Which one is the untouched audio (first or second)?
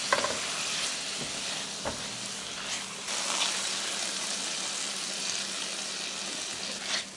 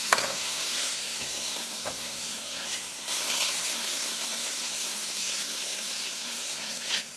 first